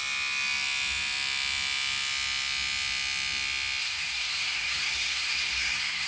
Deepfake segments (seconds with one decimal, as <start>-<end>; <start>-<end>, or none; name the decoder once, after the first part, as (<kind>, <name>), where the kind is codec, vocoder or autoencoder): 3.8-6.1 (codec, SNAC)